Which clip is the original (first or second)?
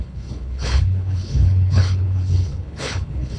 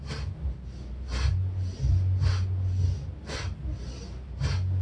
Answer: second